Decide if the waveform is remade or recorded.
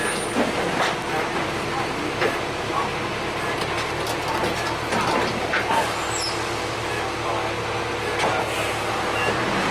recorded